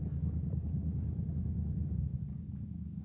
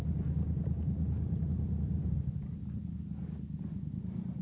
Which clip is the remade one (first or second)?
first